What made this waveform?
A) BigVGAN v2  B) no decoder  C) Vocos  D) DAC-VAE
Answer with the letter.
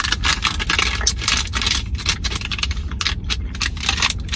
B